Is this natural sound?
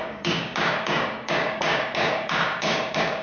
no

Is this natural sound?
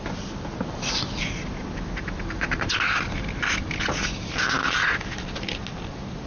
yes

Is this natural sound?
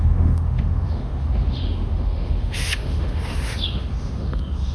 no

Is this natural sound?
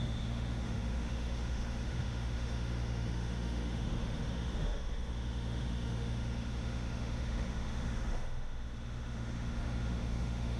no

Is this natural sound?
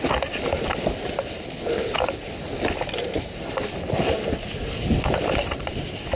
yes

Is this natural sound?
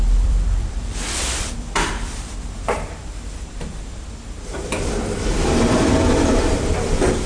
no